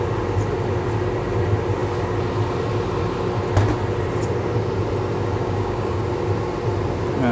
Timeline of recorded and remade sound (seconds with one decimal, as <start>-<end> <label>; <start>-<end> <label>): 0.0-5.4 recorded; 5.4-6.0 remade; 6.0-7.3 recorded